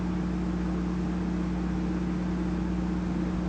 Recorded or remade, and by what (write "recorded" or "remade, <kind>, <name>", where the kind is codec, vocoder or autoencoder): recorded